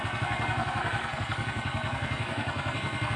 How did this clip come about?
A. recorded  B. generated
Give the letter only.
B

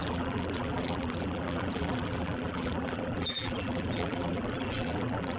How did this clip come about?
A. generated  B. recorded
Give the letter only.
A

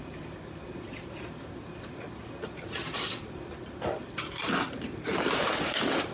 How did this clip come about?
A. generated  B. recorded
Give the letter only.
A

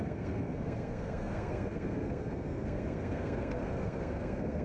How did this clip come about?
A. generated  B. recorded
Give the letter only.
A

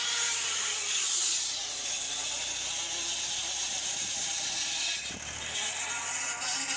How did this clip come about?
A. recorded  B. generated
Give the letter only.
A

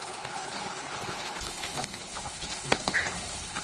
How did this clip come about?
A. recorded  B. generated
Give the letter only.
B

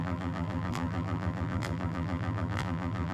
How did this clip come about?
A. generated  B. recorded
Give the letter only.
A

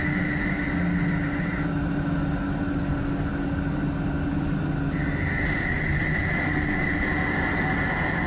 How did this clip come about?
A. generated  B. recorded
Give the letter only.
B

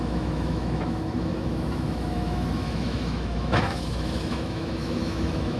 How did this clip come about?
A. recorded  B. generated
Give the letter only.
B